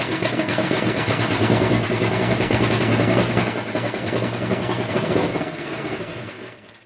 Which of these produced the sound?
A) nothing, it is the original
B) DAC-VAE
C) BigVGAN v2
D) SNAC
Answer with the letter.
D